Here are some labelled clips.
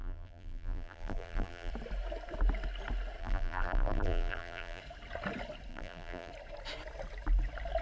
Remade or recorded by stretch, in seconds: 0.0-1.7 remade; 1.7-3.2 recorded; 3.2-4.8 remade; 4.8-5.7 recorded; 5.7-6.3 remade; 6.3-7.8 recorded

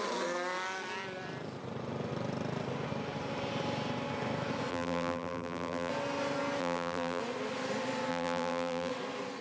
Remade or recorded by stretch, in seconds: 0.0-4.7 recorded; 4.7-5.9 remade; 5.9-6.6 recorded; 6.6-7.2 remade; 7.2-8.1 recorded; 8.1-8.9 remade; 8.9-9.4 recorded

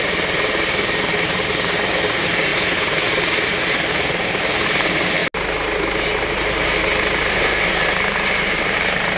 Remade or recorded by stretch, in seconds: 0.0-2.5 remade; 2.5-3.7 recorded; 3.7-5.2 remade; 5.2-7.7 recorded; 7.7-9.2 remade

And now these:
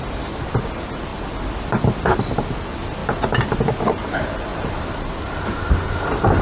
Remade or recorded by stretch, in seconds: 0.0-6.4 recorded

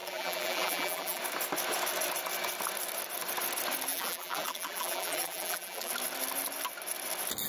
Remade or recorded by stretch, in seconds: 0.0-1.2 remade; 1.2-3.9 recorded; 3.9-5.9 remade; 5.9-7.5 recorded

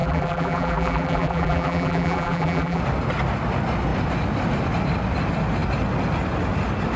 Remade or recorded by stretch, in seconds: 0.0-2.8 remade; 2.8-7.0 recorded